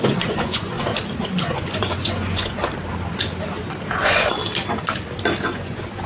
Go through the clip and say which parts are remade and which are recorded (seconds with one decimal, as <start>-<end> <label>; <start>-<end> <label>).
0.0-0.9 remade; 0.9-1.4 recorded; 1.4-2.6 remade; 2.6-4.0 recorded; 4.0-4.4 remade; 4.4-5.4 recorded; 5.4-6.1 remade